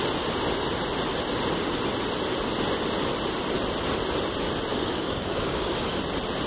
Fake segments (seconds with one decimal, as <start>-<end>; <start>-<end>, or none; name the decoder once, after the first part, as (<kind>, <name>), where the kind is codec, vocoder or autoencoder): 4.7-6.0 (codec, DAC)